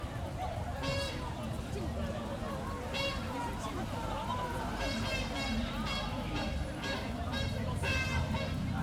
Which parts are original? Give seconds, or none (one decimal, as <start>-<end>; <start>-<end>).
0.0-5.6; 8.2-8.8